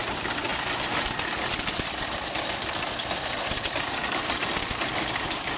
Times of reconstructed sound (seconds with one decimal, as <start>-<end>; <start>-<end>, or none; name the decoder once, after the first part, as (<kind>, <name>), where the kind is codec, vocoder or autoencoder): none